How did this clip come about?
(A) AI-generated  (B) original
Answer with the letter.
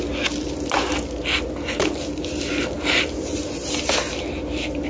B